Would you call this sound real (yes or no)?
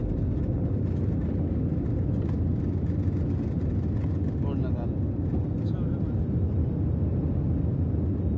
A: yes